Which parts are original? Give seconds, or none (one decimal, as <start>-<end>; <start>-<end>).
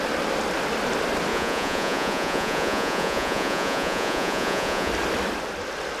0.0-1.3; 4.9-6.0